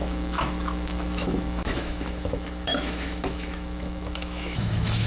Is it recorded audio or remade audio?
remade